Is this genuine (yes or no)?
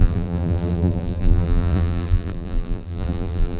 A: no